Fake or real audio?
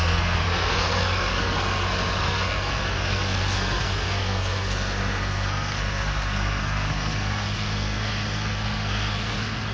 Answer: fake